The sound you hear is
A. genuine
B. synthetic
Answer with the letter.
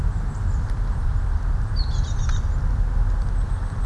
A